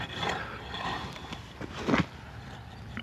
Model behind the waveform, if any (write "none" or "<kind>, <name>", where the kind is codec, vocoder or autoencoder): none